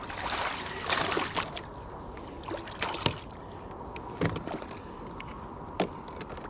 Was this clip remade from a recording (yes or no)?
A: no